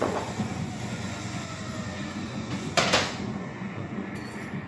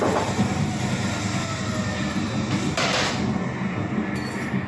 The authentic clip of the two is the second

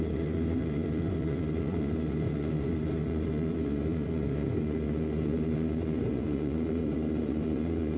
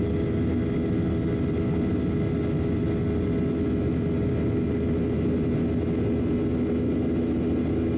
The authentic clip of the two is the second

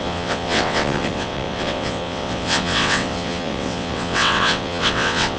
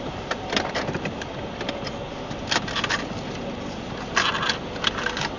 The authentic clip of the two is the second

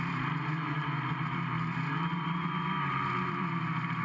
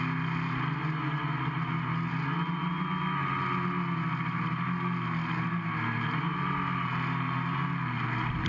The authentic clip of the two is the second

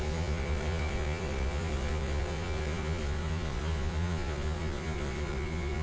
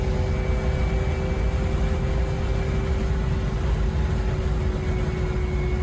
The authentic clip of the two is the second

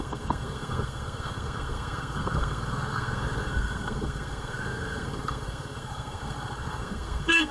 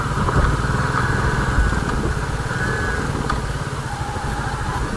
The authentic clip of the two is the second